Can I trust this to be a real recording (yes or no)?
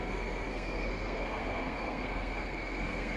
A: no